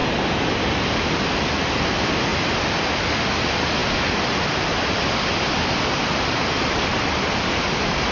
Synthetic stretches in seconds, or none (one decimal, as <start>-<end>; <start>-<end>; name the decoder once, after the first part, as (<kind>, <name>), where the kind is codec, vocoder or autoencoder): none